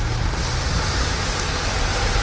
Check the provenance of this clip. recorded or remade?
recorded